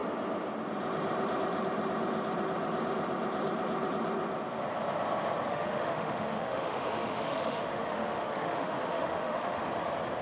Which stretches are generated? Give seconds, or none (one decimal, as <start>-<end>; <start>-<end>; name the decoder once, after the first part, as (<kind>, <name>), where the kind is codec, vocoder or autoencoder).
5.5-9.6 (autoencoder, DAC-VAE)